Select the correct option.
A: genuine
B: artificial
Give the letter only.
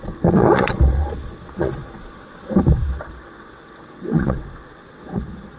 B